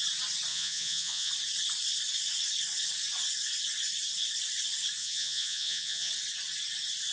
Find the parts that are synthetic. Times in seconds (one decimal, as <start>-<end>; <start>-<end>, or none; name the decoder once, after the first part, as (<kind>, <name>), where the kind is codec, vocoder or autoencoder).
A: 0.5-1.3 (vocoder, Vocos); 5.0-6.1